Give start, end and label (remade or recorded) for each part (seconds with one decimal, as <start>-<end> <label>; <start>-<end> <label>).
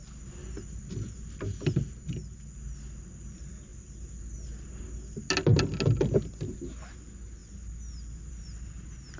0.0-0.4 recorded; 0.4-2.5 remade; 2.5-9.2 recorded